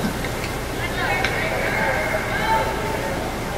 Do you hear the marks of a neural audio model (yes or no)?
no